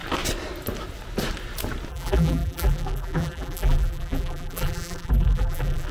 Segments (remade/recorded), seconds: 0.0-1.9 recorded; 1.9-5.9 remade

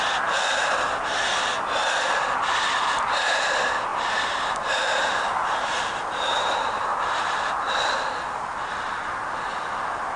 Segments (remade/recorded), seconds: 0.0-3.9 recorded; 3.9-5.9 remade; 5.9-6.9 recorded; 6.9-7.5 remade; 7.5-10.2 recorded

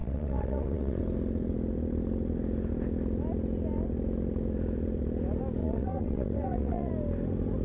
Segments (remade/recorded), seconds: 0.0-1.0 remade; 1.0-5.6 recorded; 5.6-6.9 remade; 6.9-7.6 recorded

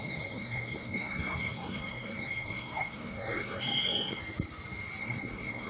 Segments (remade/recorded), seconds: 0.0-4.2 remade; 4.2-5.0 recorded; 5.0-5.7 remade

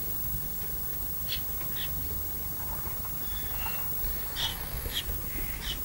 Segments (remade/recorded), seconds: 0.0-4.5 recorded; 4.5-5.0 remade; 5.0-5.8 recorded